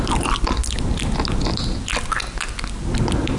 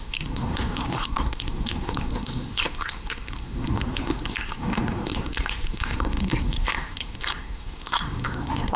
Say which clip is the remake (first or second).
second